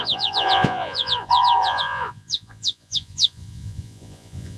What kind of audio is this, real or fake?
fake